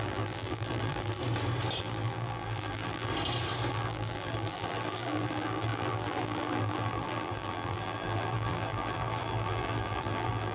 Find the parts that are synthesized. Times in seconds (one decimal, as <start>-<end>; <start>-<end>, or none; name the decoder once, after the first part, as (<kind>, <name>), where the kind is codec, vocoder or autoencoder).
0.0-1.2 (vocoder, BigVGAN v2); 1.8-3.1; 3.7-10.5